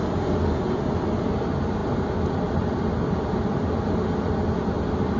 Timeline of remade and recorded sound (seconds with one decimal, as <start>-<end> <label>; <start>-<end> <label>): 0.0-5.2 recorded